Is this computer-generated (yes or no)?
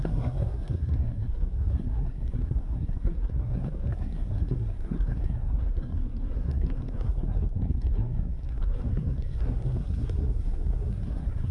yes